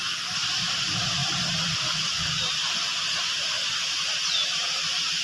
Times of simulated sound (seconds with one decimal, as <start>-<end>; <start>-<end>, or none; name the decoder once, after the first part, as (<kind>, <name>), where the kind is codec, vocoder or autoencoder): 1.2-2.7 (vocoder, BigVGAN v2)